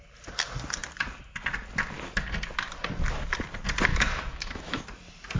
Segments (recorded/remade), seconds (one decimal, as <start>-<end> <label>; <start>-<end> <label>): 0.0-3.9 recorded; 3.9-4.8 remade; 4.8-5.4 recorded